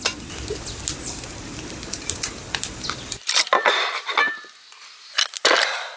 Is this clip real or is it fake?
real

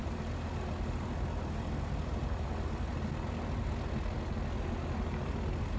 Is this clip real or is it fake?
real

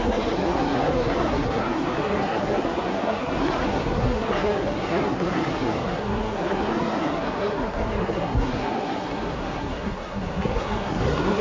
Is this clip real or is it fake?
fake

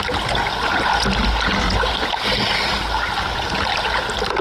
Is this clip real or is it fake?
real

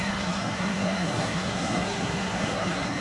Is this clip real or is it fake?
fake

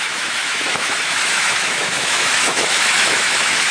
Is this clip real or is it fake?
fake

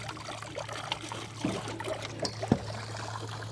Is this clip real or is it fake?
real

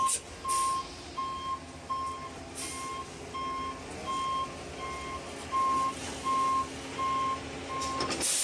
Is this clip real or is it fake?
real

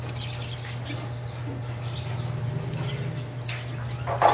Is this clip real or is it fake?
real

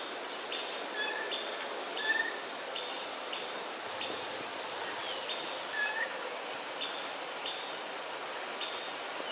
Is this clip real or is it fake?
real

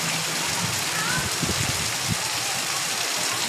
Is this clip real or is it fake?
real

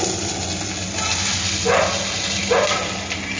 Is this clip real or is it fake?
real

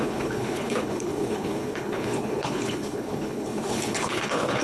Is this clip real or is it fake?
fake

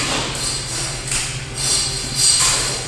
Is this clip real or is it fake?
real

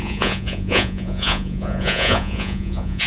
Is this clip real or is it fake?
fake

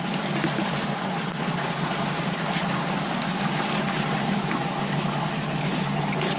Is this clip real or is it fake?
real